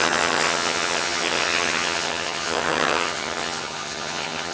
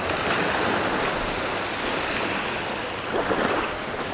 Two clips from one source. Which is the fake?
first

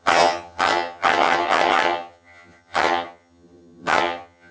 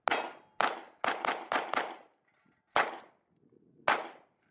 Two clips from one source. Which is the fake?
first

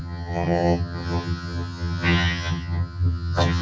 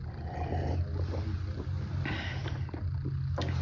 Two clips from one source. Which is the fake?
first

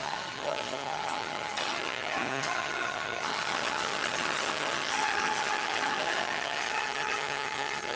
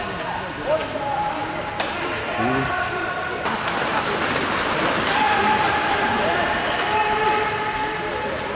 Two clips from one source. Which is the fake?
first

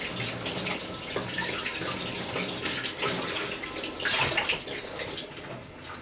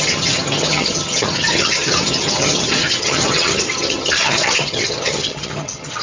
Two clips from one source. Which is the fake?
second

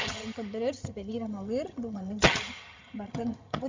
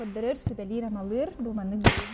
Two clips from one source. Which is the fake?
first